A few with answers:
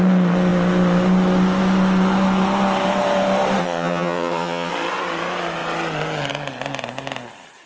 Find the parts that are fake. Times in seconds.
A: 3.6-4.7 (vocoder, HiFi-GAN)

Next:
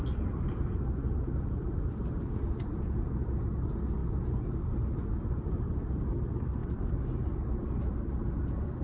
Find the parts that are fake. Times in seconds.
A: none

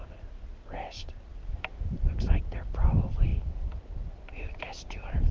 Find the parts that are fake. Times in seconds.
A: 1.3-2.1 (vocoder, BigVGAN v2)

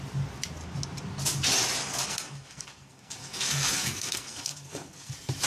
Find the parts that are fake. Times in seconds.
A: 1.8-5.1 (codec, SNAC)

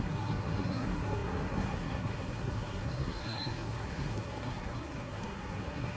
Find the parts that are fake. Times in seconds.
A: 0.0-6.0 (codec, SNAC)